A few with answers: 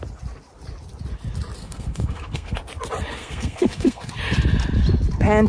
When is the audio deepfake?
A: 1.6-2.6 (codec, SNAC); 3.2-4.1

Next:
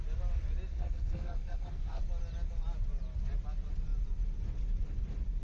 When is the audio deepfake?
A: 0.7-2.0 (codec, SNAC)

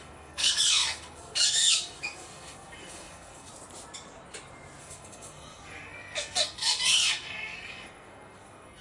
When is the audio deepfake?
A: 0.0-3.5 (codec, SNAC); 4.8-8.8

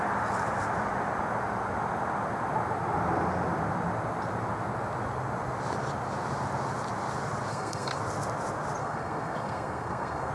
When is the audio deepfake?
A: 7.5-8.0 (codec, SNAC); 8.8-10.3

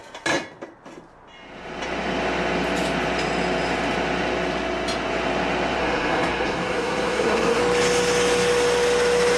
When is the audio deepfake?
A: 5.8-7.6 (codec, SNAC)

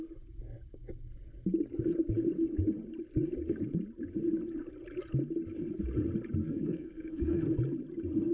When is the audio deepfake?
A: 6.4-7.4 (codec, SNAC)